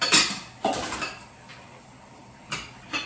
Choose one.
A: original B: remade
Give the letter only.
A